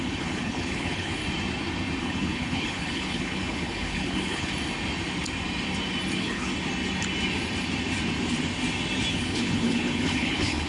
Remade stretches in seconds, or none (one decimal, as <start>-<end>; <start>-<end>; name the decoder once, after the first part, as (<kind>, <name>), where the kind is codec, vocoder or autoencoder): 0.0-1.2 (codec, HILCodec); 2.0-4.5; 6.1-6.5; 9.1-10.7